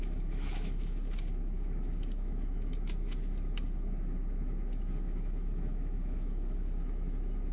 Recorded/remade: remade